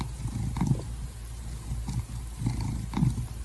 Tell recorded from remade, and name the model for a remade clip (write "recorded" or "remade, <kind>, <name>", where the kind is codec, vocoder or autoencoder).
recorded